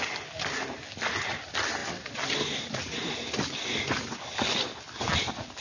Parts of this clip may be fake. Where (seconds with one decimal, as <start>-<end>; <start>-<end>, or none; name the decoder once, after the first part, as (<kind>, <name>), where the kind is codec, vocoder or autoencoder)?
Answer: none